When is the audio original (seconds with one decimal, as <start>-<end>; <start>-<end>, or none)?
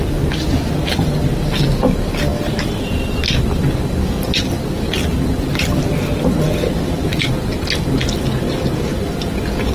0.0-9.7